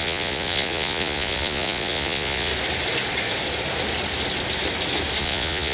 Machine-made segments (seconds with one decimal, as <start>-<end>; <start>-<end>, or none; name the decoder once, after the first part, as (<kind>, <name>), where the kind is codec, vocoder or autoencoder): 0.0-2.5 (vocoder, Vocos); 5.2-5.7